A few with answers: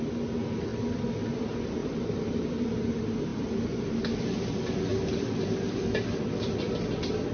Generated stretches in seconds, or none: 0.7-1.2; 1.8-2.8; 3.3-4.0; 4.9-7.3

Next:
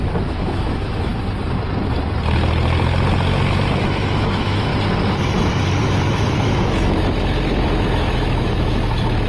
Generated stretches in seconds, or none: 0.0-1.1; 3.8-4.7; 5.8-9.3

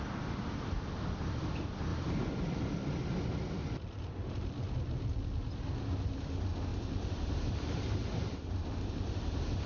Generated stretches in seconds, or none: 1.9-2.4; 6.7-8.9